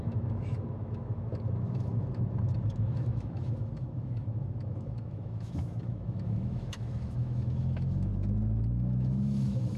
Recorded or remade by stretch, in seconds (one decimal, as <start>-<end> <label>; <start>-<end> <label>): 0.0-8.1 remade; 8.1-8.7 recorded; 8.7-9.8 remade